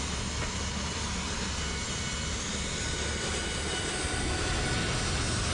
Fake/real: real